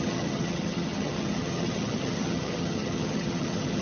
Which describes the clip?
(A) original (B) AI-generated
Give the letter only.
B